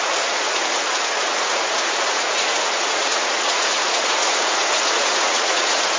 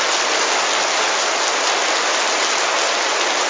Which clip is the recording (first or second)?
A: second